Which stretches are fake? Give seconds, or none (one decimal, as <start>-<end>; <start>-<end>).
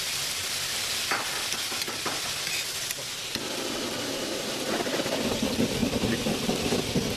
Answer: 0.0-0.4; 3.2-7.2